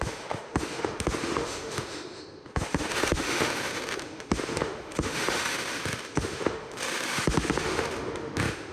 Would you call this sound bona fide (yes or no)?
no